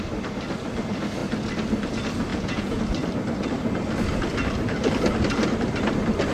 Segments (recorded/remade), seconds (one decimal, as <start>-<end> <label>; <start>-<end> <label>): 0.0-2.3 recorded; 2.3-2.8 remade; 2.8-6.3 recorded